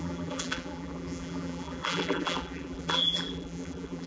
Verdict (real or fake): fake